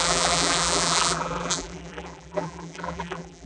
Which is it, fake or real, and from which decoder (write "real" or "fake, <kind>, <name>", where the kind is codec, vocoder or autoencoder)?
fake, vocoder, BigVGAN v2